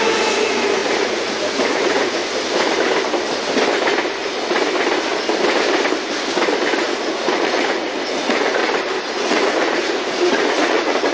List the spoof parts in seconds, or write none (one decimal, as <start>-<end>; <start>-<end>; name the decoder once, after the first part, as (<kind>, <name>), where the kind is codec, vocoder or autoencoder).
0.0-2.2 (vocoder, Vocos); 6.8-8.6; 9.1-11.1

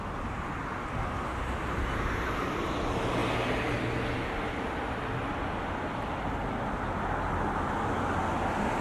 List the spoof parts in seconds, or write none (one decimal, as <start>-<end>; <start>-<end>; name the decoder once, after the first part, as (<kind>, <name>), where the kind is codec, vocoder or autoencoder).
none